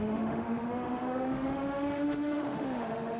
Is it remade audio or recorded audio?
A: remade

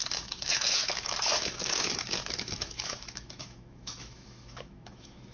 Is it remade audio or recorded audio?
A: remade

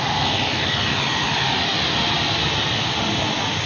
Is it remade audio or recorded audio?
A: recorded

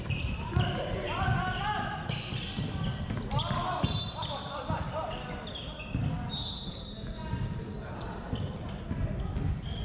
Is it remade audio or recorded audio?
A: recorded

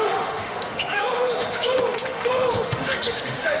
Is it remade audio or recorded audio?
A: remade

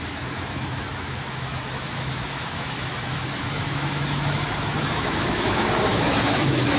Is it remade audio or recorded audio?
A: remade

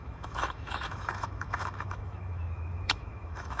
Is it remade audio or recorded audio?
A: remade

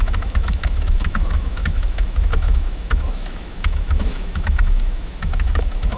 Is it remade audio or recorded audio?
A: remade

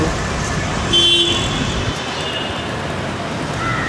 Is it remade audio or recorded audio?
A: recorded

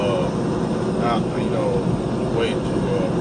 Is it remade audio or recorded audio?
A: recorded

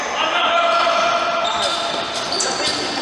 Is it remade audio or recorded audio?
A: recorded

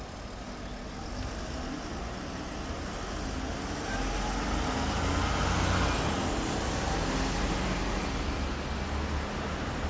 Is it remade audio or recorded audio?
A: recorded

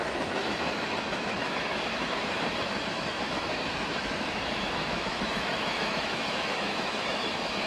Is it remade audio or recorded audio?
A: remade